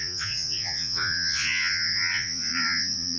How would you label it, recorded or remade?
remade